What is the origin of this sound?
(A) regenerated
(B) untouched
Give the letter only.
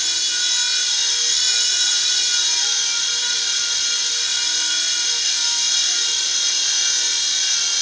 B